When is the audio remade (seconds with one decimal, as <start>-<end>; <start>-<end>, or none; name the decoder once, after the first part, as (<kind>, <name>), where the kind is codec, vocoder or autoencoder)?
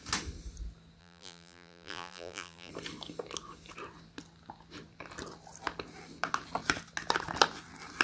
1.0-2.7 (vocoder, BigVGAN v2)